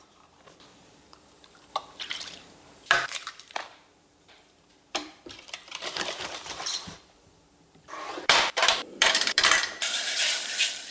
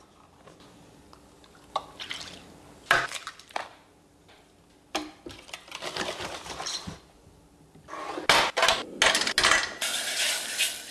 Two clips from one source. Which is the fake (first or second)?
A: first